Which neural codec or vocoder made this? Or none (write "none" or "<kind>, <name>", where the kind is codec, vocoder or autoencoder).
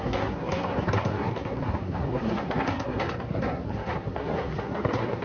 codec, SNAC